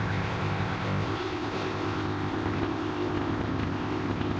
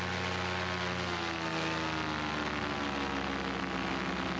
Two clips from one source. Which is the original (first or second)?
second